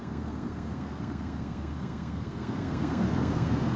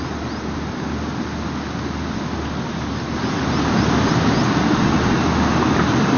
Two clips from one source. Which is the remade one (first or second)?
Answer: first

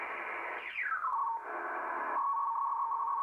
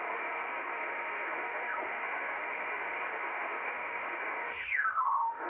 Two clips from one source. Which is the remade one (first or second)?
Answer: second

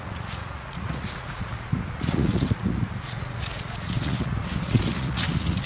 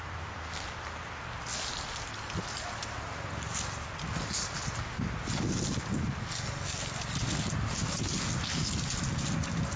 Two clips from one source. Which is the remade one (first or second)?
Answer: first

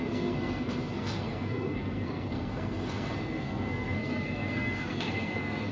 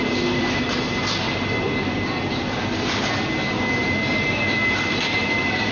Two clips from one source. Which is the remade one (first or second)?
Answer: first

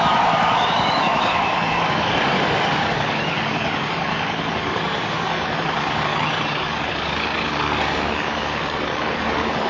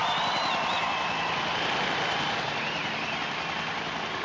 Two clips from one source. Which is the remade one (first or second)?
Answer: first